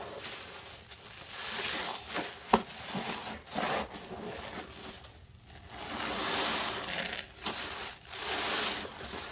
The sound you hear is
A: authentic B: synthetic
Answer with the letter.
A